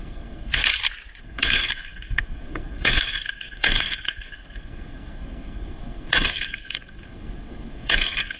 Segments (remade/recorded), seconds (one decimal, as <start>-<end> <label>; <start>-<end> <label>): 0.0-0.6 remade; 0.6-1.2 recorded; 1.2-8.4 remade